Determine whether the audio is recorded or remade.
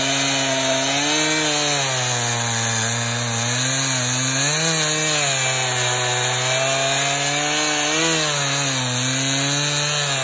recorded